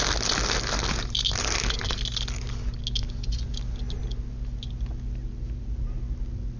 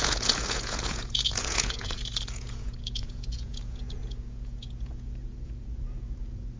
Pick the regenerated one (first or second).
second